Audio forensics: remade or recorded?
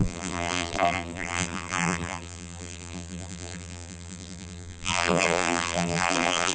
remade